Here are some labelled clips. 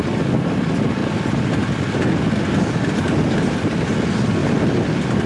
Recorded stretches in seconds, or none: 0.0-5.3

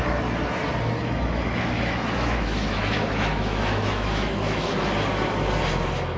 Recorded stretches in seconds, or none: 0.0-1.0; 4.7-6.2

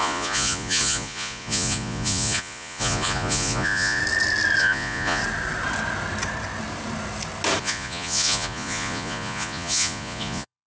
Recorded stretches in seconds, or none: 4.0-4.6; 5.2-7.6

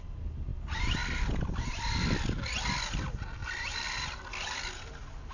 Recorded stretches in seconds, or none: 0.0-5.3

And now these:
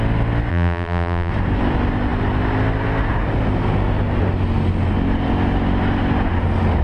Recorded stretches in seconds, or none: 0.0-0.5; 1.3-6.8

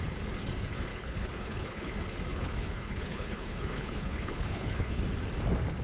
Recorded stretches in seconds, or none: 0.0-0.9; 1.9-2.3; 5.0-5.8

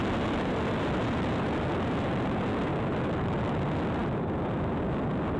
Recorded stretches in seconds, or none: 1.0-5.4